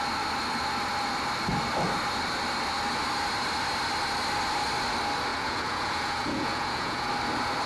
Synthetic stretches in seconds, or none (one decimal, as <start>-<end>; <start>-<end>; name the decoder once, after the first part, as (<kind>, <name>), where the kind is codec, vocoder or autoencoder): 5.3-7.1 (vocoder, Vocos)